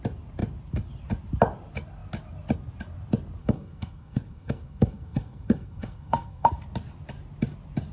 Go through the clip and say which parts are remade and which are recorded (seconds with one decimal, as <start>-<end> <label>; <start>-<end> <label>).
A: 0.0-3.4 recorded; 3.4-6.5 remade; 6.5-7.9 recorded